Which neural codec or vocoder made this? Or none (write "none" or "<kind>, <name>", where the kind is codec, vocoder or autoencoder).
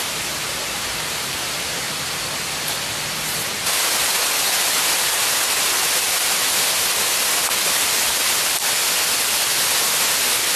none